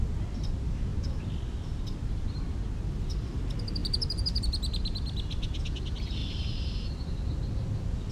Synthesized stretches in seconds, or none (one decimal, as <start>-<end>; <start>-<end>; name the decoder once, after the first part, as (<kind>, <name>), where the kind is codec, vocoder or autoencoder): 3.8-4.4 (vocoder, BigVGAN v2); 6.2-6.9

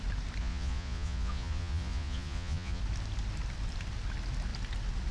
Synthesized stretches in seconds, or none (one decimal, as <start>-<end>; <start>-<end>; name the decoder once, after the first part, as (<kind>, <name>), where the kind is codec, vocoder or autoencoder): 0.4-2.8 (vocoder, Vocos)

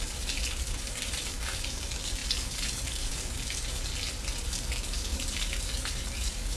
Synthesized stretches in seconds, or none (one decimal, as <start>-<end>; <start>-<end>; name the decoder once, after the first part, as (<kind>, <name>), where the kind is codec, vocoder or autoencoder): 0.0-3.9 (codec, DAC); 4.5-6.6

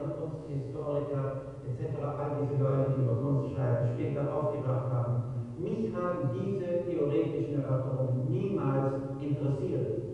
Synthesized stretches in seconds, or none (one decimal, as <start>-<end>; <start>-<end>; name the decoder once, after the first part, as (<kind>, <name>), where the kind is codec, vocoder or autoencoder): 0.4-1.0 (vocoder, Vocos); 2.7-4.6